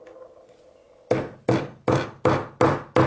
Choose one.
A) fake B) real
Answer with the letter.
B